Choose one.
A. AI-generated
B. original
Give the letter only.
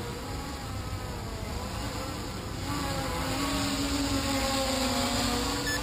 B